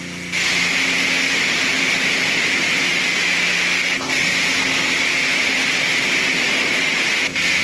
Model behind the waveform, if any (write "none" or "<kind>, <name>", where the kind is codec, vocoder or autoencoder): none